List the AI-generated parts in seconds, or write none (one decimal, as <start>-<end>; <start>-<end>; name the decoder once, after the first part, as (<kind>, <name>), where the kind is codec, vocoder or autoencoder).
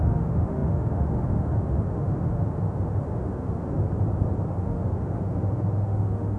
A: 0.0-3.8 (autoencoder, DAC-VAE); 4.6-6.4